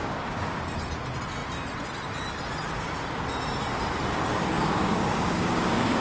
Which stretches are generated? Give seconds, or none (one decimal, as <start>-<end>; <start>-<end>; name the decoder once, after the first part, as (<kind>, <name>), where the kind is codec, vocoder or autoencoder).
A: 0.0-0.6 (codec, DAC); 4.5-6.0